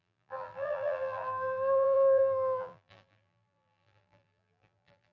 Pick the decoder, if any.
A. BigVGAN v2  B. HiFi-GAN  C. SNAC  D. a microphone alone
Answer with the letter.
A